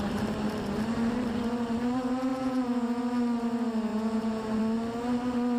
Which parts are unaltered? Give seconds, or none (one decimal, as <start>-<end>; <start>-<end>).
0.0-2.3; 3.0-3.9; 4.6-5.6